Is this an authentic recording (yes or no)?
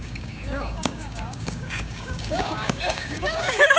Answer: no